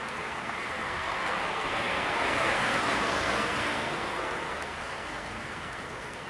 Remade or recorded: remade